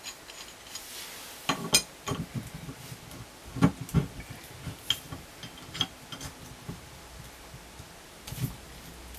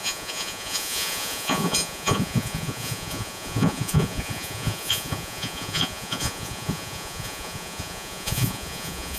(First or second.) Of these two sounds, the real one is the first